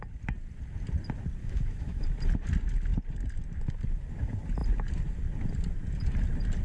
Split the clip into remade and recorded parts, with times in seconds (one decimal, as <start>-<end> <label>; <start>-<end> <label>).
0.0-1.4 recorded; 1.4-2.0 remade; 2.0-6.6 recorded